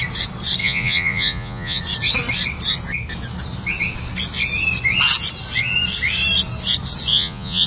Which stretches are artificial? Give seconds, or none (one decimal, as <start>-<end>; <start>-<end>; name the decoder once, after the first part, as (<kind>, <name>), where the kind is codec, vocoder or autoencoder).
0.6-1.8 (vocoder, Vocos); 7.1-7.7